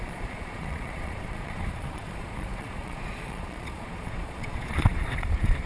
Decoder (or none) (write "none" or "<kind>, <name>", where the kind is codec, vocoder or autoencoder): vocoder, Vocos